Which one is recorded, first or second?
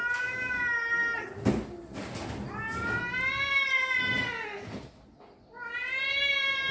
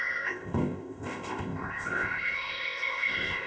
first